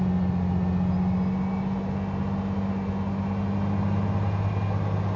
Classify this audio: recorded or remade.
recorded